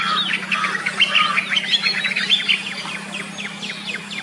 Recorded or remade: recorded